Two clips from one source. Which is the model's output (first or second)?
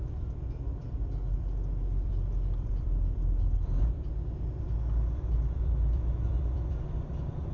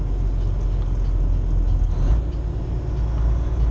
first